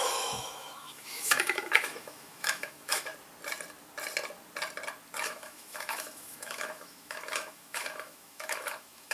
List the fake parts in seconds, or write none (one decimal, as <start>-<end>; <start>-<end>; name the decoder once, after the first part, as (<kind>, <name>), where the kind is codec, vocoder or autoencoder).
0.0-3.1 (autoencoder, DAC-VAE); 5.2-9.1